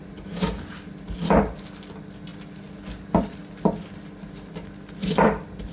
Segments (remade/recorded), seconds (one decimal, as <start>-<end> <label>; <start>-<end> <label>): 0.0-5.7 recorded